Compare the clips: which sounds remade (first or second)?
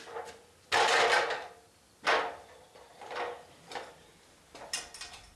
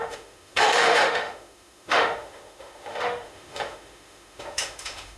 second